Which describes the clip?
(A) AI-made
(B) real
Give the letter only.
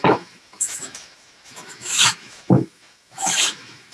A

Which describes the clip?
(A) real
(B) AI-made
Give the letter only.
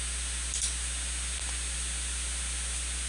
A